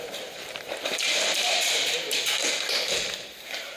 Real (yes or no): no